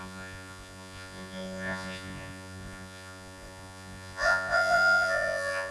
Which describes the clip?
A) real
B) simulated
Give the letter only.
B